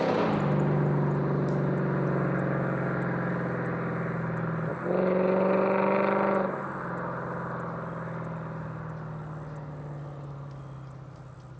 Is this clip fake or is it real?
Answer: real